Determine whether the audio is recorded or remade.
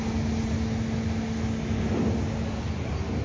recorded